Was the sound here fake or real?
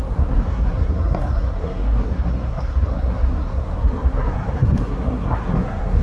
fake